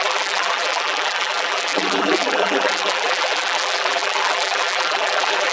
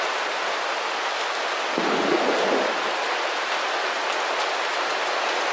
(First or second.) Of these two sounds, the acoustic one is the second